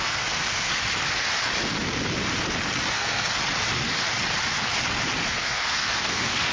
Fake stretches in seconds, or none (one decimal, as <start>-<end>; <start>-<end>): 0.0-0.8; 2.9-3.4; 5.2-6.5

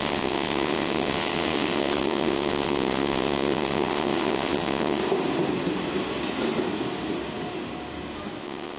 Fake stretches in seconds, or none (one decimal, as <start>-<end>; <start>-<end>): 0.0-5.0; 8.4-8.8